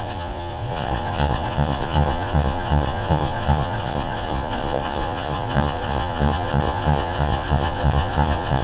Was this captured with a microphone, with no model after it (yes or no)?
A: no